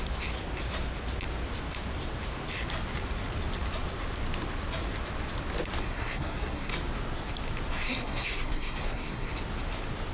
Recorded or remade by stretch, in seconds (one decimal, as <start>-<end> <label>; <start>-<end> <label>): 0.0-5.8 recorded; 5.8-6.7 remade; 6.7-8.0 recorded; 8.0-9.3 remade; 9.3-10.1 recorded